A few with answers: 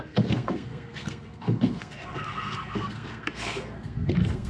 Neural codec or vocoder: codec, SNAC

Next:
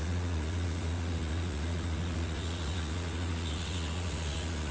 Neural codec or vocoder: vocoder, Vocos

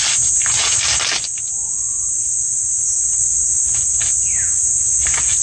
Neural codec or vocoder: none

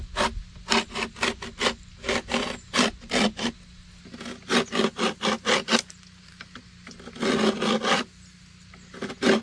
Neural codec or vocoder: none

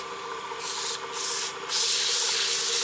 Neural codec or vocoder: none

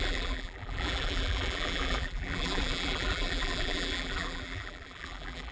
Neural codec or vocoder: vocoder, BigVGAN v2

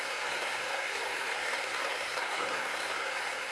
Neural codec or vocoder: codec, SNAC